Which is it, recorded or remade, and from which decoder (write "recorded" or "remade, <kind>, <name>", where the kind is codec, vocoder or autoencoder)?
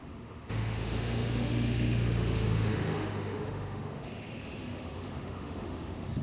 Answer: remade, autoencoder, DAC-VAE